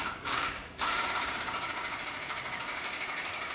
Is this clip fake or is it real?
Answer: fake